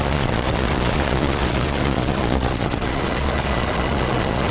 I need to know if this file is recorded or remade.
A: remade